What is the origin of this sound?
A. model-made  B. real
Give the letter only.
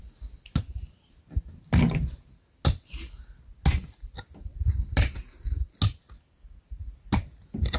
B